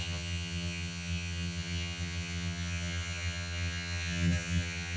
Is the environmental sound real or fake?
fake